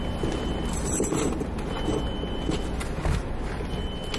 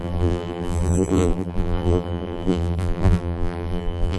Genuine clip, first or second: first